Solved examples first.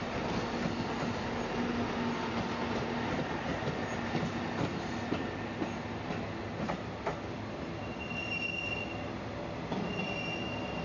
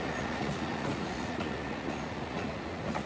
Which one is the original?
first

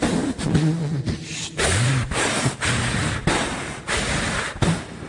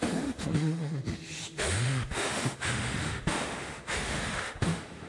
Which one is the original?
first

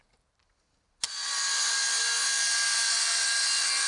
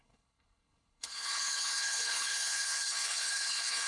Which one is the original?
first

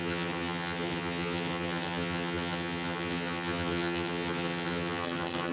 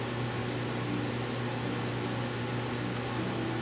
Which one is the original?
second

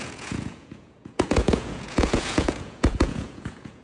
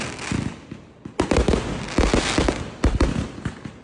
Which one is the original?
second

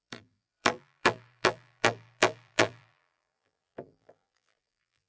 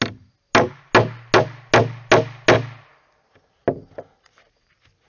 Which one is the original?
second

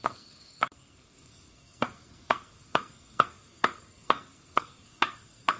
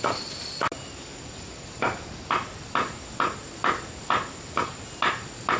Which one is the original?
second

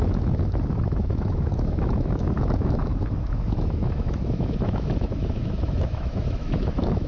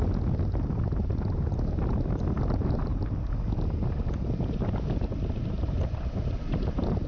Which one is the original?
second